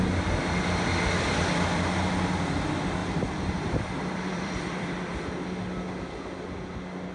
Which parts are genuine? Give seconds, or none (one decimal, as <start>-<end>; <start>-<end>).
0.0-3.0; 5.2-7.1